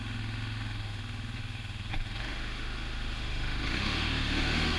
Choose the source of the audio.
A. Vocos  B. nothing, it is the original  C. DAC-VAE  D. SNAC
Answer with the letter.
C